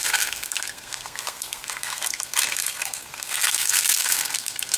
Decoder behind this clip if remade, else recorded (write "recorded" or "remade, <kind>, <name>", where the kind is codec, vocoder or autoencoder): remade, codec, SNAC